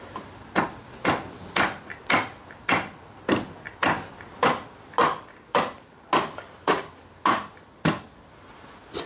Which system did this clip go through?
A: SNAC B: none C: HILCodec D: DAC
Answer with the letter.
B